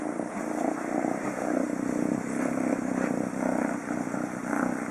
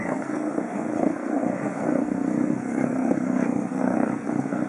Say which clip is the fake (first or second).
second